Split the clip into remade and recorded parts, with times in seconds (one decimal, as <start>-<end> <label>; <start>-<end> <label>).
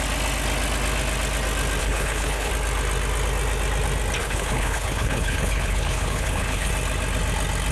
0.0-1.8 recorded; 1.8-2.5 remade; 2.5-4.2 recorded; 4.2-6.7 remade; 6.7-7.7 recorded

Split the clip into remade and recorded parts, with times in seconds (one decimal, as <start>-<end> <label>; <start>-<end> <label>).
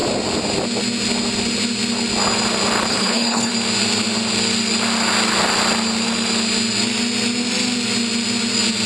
0.0-2.9 recorded; 2.9-3.5 remade; 3.5-8.9 recorded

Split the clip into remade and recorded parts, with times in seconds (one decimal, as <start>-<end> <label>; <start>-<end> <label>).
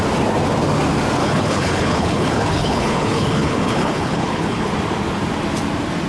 0.0-1.2 recorded; 1.2-4.7 remade; 4.7-6.1 recorded